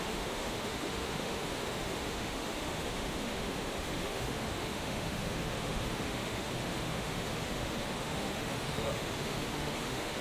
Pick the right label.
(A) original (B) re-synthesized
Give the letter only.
B